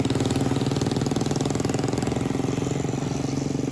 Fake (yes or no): no